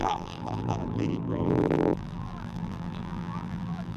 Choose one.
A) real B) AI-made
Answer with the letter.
B